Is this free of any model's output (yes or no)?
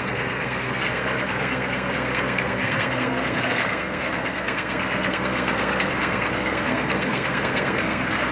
no